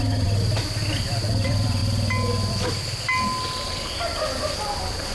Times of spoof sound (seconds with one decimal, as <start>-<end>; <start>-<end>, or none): 0.0-1.8; 2.5-5.1